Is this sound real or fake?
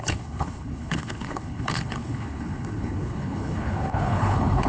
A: fake